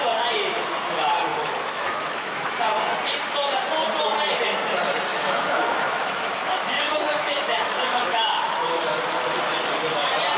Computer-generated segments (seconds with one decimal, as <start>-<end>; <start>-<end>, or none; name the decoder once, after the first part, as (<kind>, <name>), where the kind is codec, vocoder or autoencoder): 1.3-2.5 (autoencoder, DAC-VAE); 5.1-8.8